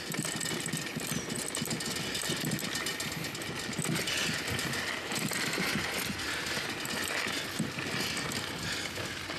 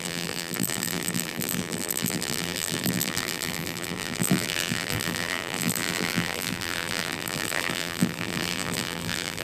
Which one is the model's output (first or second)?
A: second